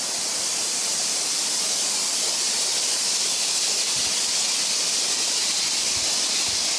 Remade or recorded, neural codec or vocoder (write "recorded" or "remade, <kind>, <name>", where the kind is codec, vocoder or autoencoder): recorded